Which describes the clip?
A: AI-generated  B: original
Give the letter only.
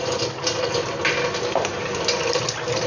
B